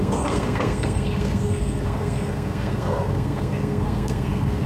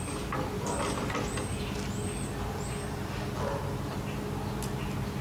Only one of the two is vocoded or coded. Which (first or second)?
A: first